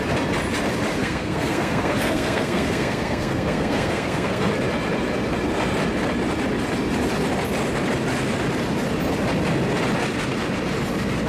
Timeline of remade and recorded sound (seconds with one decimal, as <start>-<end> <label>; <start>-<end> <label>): 0.0-1.0 recorded; 1.0-4.5 remade; 4.5-11.3 recorded